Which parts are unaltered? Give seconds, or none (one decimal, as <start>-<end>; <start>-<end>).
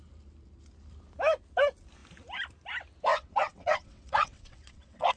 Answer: 0.0-3.1